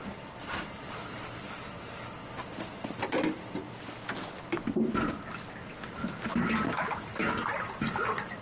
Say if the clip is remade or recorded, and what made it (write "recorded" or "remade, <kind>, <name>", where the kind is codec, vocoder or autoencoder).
recorded